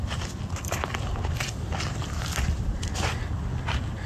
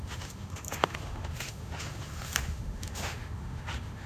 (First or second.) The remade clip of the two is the second